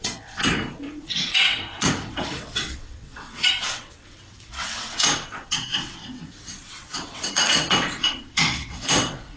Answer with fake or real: fake